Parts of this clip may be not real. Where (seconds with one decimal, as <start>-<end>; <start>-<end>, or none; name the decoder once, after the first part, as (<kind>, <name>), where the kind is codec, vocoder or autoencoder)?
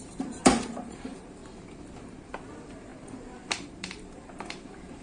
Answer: 0.0-1.4 (vocoder, BigVGAN v2); 2.5-5.0